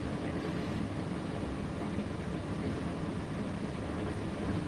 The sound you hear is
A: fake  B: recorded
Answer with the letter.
B